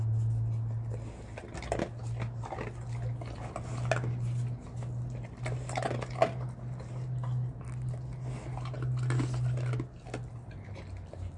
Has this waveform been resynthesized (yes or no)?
no